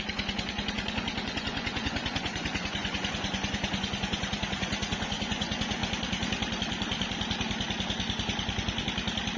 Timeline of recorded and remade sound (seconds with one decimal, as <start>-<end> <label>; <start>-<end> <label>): 0.0-5.8 remade; 5.8-9.4 recorded